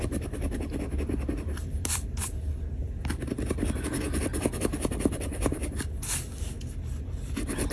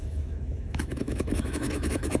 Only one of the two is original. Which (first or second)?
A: first